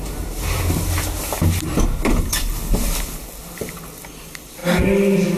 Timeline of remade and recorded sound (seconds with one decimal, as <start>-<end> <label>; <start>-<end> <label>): 0.0-5.4 recorded